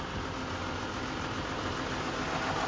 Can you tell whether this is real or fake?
real